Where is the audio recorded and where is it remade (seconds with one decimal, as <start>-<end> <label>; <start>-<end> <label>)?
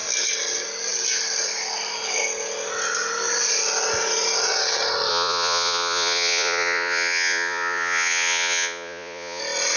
0.0-5.1 recorded; 5.1-9.4 remade; 9.4-9.8 recorded